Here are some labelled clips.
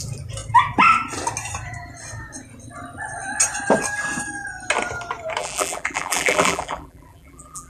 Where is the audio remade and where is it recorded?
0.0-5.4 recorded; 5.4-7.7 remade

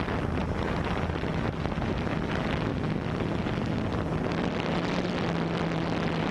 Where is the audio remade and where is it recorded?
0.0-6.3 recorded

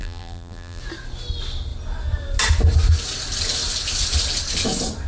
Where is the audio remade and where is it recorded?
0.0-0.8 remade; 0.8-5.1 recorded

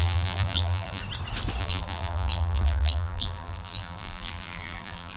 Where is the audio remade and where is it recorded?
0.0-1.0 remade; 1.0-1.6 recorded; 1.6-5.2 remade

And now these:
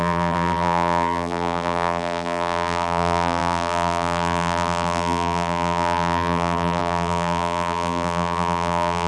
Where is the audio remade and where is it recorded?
0.0-9.1 remade

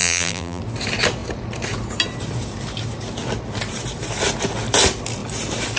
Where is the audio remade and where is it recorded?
0.0-0.6 remade; 0.6-5.8 recorded